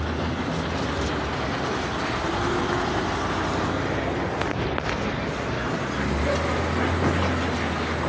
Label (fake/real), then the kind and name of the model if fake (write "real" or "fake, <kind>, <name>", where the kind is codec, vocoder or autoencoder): real